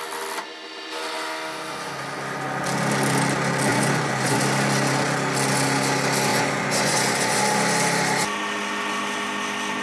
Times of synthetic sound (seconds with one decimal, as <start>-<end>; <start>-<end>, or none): 3.7-4.4; 6.3-7.4